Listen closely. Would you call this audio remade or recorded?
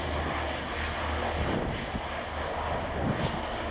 recorded